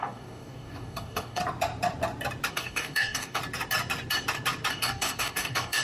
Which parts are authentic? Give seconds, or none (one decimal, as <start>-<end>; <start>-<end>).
1.4-2.5; 3.4-4.7